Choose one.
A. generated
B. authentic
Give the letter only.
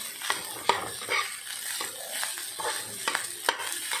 B